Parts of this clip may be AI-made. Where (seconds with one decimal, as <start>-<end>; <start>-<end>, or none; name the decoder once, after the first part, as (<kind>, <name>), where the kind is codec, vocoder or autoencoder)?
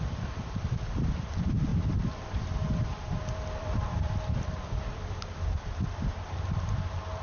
1.7-5.3 (vocoder, BigVGAN v2)